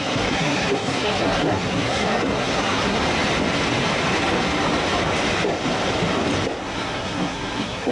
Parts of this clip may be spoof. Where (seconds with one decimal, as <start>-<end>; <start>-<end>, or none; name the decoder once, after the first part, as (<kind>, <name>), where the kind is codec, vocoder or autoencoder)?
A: 0.0-3.0 (codec, SNAC); 6.6-7.9